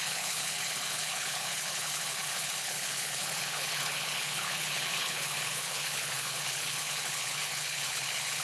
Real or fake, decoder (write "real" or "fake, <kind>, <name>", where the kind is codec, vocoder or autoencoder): fake, codec, HILCodec